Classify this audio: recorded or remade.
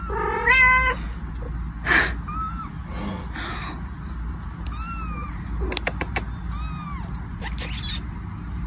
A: recorded